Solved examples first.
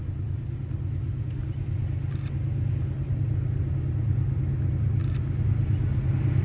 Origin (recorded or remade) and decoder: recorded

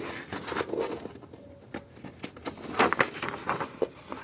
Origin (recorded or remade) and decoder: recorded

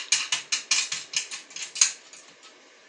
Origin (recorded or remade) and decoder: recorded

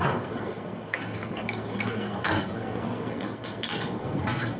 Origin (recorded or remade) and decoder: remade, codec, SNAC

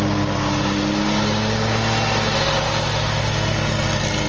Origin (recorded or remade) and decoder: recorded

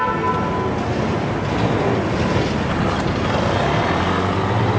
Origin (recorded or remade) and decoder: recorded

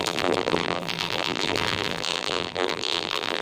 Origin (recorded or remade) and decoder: remade, vocoder, BigVGAN v2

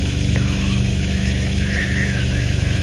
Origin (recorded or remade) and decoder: remade, autoencoder, DAC-VAE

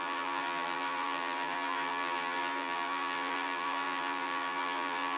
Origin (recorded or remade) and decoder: remade, vocoder, BigVGAN v2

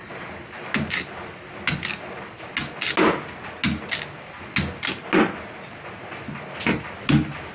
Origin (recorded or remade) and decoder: recorded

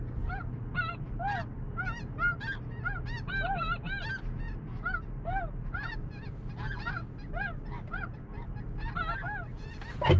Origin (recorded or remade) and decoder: recorded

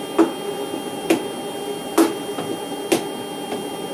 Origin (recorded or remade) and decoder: recorded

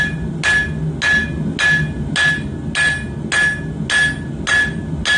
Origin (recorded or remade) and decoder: recorded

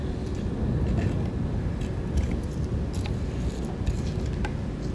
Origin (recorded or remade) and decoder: recorded